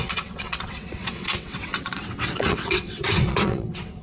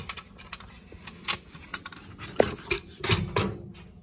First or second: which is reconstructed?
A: first